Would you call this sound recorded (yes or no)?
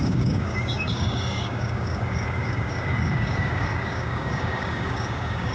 no